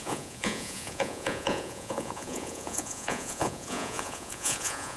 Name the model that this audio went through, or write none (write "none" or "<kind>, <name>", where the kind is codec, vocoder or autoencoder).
vocoder, Vocos